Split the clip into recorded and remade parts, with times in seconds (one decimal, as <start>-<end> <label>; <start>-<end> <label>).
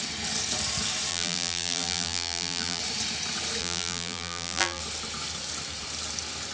0.0-1.1 recorded; 1.1-2.8 remade; 2.8-3.6 recorded; 3.6-4.8 remade; 4.8-6.5 recorded